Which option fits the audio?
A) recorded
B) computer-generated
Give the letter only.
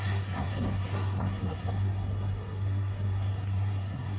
B